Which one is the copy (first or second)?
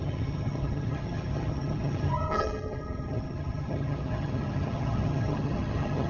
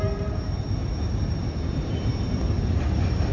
first